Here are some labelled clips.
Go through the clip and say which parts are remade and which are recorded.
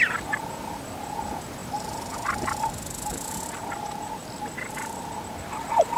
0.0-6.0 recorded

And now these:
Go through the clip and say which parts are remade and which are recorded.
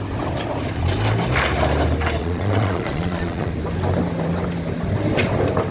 0.0-2.2 recorded; 2.2-3.5 remade; 3.5-5.7 recorded